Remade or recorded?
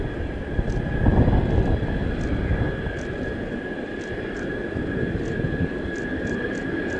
recorded